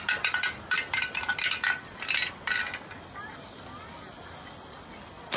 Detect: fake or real real